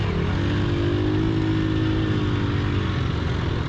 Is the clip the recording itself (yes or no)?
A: yes